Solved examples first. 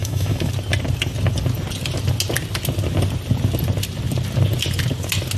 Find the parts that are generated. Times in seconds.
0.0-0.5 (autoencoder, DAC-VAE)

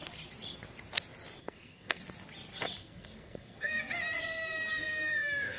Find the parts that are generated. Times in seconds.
1.4-2.0 (codec, SNAC); 2.8-3.8; 4.7-5.6

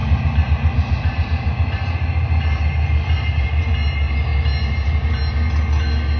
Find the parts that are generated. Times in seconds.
0.0-3.7 (vocoder, BigVGAN v2)

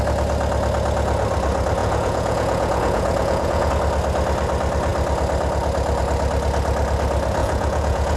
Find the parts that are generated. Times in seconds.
1.8-3.7 (vocoder, Vocos); 7.4-8.2

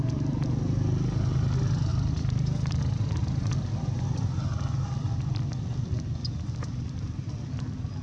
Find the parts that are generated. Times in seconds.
1.9-2.8 (vocoder, BigVGAN v2); 6.7-7.3